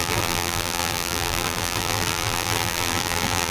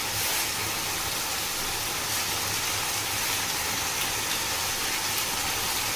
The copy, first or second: first